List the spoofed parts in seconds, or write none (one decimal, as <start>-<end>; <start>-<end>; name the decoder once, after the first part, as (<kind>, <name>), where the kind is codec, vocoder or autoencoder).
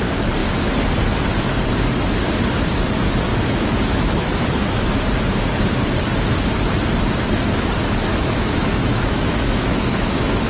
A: 3.3-4.3 (autoencoder, DAC-VAE); 8.1-10.5